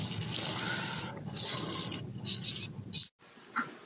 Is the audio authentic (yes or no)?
yes